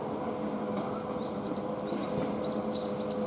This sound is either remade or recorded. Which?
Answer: recorded